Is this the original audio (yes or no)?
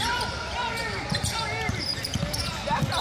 yes